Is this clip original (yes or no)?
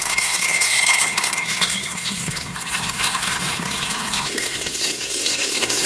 no